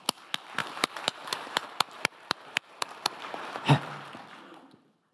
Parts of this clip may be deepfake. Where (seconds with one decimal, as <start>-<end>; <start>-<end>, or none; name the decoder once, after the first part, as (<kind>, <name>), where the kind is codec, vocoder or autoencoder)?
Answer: 0.6-3.7 (vocoder, BigVGAN v2)